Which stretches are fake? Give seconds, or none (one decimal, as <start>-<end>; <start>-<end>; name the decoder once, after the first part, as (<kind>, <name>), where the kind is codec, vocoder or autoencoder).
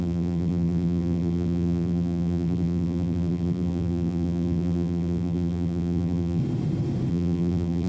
0.0-6.4 (vocoder, BigVGAN v2); 7.1-7.9